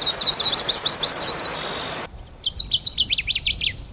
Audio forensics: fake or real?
fake